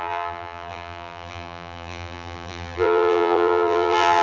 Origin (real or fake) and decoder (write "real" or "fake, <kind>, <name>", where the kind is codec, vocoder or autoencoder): fake, vocoder, BigVGAN v2